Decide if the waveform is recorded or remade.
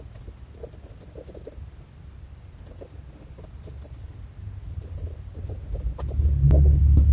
recorded